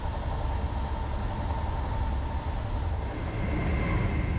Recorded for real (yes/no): yes